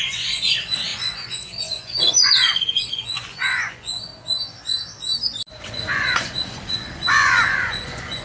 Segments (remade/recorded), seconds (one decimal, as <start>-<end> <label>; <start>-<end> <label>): 0.0-4.1 remade; 4.1-5.5 recorded; 5.5-8.2 remade